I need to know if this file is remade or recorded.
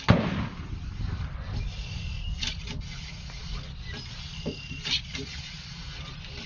recorded